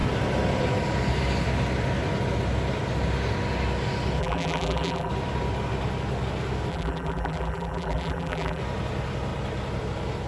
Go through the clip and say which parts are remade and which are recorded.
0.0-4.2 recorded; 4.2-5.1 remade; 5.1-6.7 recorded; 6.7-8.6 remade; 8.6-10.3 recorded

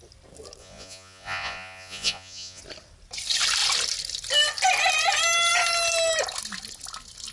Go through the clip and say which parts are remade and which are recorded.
0.0-0.6 recorded; 0.6-2.6 remade; 2.6-7.3 recorded

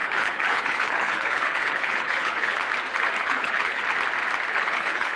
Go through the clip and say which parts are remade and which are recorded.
0.0-2.6 remade; 2.6-3.2 recorded; 3.2-3.8 remade; 3.8-4.5 recorded; 4.5-5.2 remade

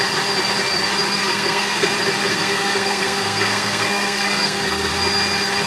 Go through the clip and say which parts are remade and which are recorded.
0.0-1.2 recorded; 1.2-1.9 remade; 1.9-2.3 recorded; 2.3-4.9 remade; 4.9-5.7 recorded